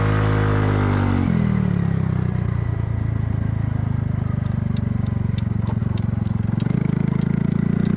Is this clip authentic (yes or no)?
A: yes